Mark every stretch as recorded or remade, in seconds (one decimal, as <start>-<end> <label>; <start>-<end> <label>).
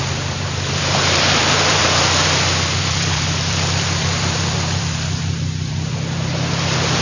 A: 0.0-1.8 remade; 1.8-2.8 recorded; 2.8-7.0 remade